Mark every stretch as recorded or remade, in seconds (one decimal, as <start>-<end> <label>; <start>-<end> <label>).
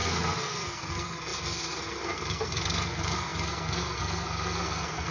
0.0-5.1 remade